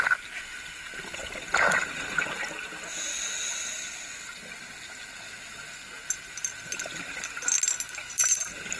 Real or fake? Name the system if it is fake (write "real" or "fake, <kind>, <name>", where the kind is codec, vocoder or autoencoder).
real